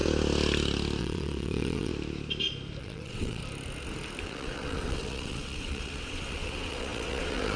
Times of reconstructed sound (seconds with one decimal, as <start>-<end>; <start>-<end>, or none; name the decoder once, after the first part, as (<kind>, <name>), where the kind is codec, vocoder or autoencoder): 1.0-1.9 (vocoder, WaveNeXt); 2.8-3.4; 4.2-7.6